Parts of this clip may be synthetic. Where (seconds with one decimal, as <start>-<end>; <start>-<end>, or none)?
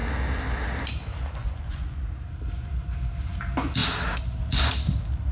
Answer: 1.4-2.0